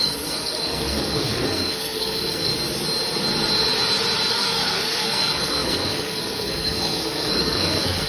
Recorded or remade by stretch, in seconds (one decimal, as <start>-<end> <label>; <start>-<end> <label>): 0.0-2.5 remade; 2.5-4.3 recorded; 4.3-8.1 remade